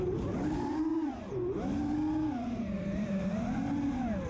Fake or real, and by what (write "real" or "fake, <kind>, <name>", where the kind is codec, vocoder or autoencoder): real